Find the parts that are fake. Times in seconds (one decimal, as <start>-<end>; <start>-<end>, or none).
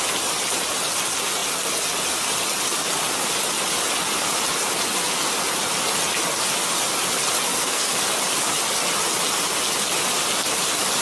7.5-8.0